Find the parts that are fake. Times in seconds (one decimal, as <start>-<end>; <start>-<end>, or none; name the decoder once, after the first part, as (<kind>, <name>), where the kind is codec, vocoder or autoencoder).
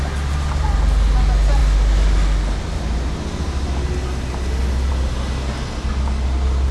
none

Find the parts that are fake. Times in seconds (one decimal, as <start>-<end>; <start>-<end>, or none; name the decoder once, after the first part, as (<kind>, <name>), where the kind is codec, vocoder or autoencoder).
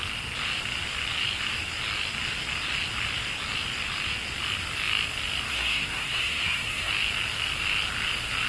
5.5-6.9 (codec, SNAC)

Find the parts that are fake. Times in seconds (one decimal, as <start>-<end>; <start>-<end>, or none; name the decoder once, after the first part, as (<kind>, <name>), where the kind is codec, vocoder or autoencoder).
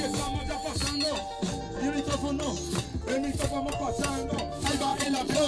4.9-5.5 (vocoder, Vocos)